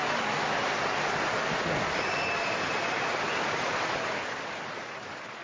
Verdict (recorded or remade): recorded